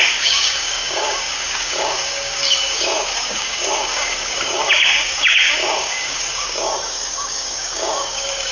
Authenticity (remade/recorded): remade